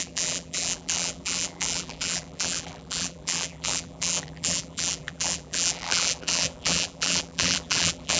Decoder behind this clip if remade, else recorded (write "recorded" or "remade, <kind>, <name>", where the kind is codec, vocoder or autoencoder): remade, vocoder, BigVGAN v2